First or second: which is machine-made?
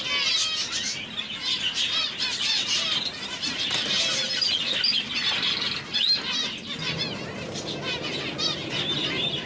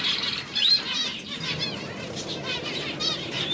second